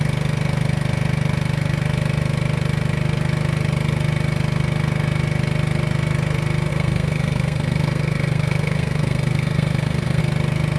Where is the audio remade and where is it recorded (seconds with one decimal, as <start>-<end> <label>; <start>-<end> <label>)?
0.0-6.7 recorded; 6.7-10.2 remade; 10.2-10.8 recorded

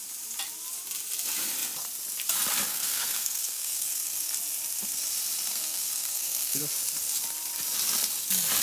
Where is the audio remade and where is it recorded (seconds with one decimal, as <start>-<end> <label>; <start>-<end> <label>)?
0.0-2.7 recorded; 2.7-4.3 remade; 4.3-5.5 recorded; 5.5-6.6 remade; 6.6-8.6 recorded

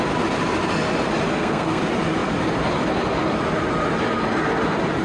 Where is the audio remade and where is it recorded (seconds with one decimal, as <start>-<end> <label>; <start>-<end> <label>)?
0.0-1.3 recorded; 1.3-1.8 remade; 1.8-5.0 recorded

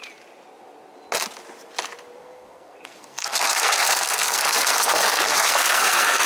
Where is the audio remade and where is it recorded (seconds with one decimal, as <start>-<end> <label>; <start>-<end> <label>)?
0.0-2.2 recorded; 2.2-6.3 remade